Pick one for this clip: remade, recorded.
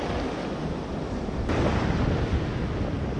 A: recorded